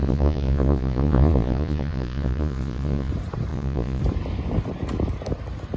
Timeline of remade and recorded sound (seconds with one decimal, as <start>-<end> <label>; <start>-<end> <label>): 0.0-3.1 remade; 3.1-3.5 recorded; 3.5-4.0 remade; 4.0-5.8 recorded